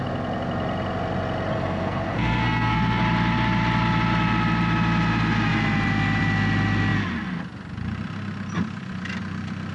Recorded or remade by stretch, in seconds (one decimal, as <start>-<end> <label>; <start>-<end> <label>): 0.0-1.5 recorded; 1.5-3.0 remade; 3.0-9.7 recorded